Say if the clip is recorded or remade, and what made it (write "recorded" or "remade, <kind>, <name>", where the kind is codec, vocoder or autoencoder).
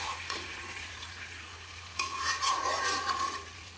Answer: remade, vocoder, Vocos